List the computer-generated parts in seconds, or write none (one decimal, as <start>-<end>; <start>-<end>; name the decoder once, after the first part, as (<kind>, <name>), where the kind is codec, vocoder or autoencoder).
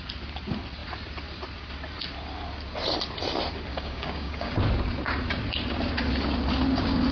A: 3.7-4.5 (codec, DAC)